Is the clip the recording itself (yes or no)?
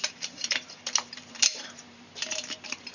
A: no